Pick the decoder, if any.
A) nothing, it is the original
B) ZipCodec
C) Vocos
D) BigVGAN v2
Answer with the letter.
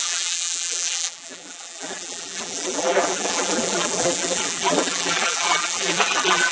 D